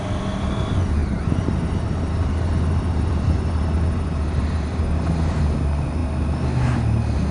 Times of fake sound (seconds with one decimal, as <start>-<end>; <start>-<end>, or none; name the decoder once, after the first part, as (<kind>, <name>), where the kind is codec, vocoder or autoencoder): 1.0-5.4 (vocoder, BigVGAN v2)